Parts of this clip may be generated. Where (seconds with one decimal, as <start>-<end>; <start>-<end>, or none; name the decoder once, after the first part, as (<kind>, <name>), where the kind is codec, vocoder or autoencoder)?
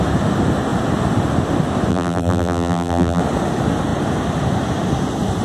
1.9-3.2 (vocoder, BigVGAN v2)